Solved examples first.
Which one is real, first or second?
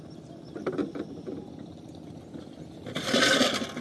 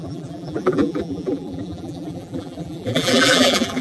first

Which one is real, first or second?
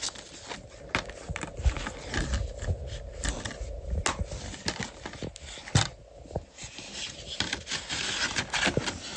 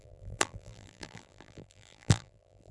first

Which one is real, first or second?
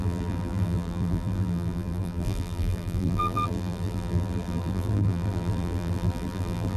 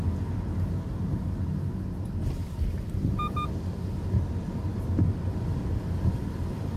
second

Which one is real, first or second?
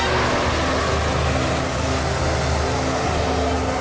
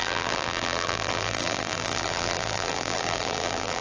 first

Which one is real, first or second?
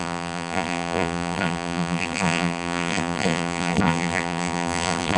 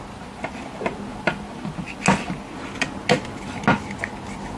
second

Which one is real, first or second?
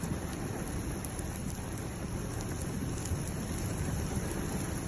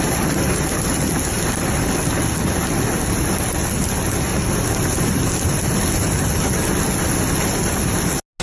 second